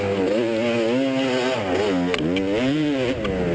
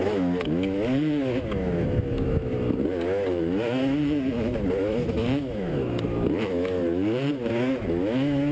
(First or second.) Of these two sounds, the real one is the first